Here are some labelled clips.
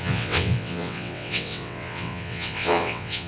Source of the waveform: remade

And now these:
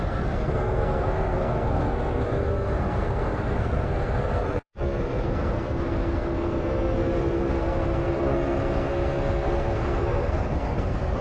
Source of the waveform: remade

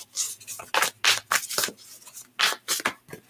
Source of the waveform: recorded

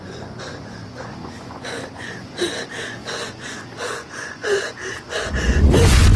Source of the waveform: remade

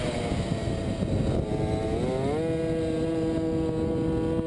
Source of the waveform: recorded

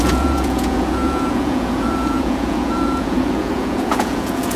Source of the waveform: remade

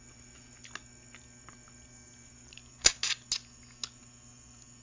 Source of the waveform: recorded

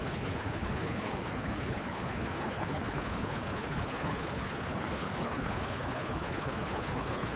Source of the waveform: remade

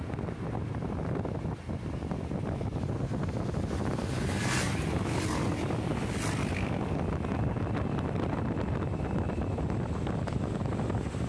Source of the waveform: recorded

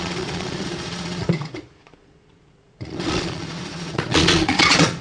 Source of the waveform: remade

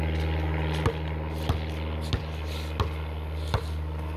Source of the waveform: recorded